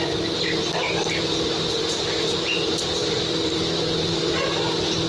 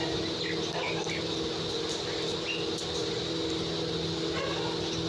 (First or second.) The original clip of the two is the second